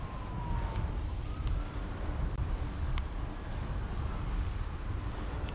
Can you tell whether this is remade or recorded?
recorded